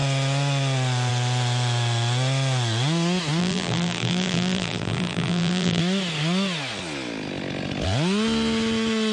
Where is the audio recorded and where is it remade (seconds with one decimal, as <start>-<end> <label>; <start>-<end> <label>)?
0.0-3.4 recorded; 3.4-5.8 remade; 5.8-9.1 recorded